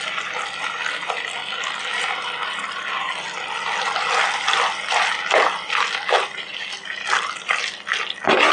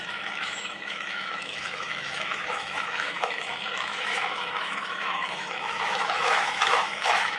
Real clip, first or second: first